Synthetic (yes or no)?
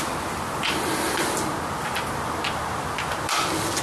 no